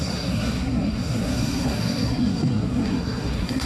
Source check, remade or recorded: remade